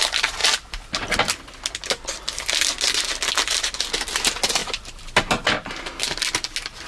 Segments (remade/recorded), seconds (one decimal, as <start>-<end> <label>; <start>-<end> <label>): 0.0-6.9 recorded